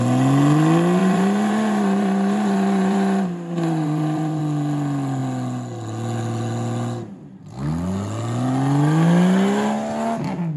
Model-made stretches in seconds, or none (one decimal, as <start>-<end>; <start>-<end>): 1.0-4.4